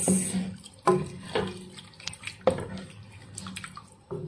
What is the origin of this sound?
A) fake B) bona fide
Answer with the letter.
B